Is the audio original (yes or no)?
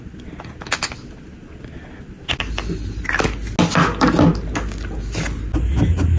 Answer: yes